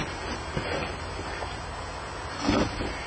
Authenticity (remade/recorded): recorded